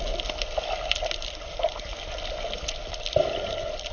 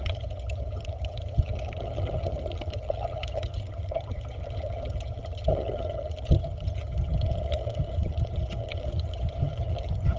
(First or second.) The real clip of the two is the first